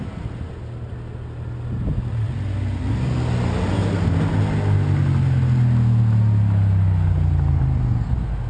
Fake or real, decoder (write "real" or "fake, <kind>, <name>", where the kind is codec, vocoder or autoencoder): real